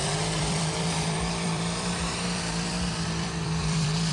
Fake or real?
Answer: fake